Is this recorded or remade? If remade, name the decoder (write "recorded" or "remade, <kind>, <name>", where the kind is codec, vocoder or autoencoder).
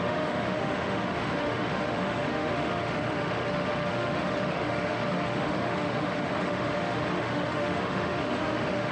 remade, autoencoder, DAC-VAE